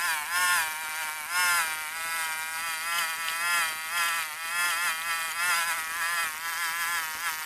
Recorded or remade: recorded